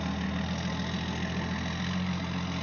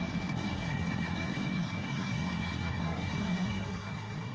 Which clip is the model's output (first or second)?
second